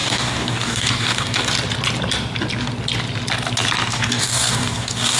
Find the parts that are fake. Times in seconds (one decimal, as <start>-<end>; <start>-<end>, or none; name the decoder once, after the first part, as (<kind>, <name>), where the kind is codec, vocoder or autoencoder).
0.0-1.5 (codec, DAC); 3.9-5.2